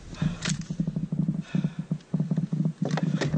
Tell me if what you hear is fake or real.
real